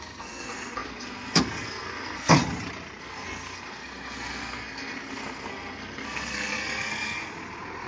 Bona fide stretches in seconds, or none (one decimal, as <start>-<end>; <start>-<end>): 2.4-3.0; 7.2-7.9